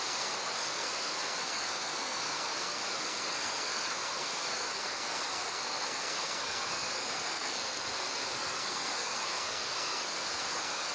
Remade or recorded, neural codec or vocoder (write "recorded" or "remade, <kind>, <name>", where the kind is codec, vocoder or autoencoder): remade, codec, SNAC